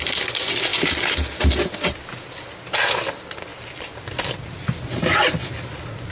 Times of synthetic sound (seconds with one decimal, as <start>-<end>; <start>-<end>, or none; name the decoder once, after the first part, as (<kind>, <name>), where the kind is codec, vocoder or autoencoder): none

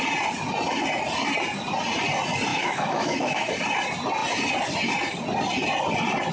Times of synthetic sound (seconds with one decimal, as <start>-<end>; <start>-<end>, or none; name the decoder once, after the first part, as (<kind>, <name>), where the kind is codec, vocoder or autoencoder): 2.5-3.5 (autoencoder, DAC-VAE)

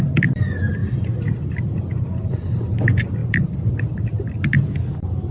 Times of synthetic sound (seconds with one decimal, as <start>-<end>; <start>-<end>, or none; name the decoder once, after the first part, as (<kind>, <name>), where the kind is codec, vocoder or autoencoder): none

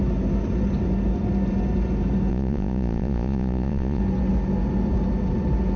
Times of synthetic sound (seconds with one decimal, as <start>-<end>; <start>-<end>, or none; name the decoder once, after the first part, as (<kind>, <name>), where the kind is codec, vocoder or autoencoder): 2.3-4.0 (vocoder, Vocos)